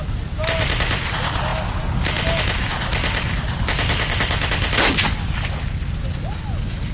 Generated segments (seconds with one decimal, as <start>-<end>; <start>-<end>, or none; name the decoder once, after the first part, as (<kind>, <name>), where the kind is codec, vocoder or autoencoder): none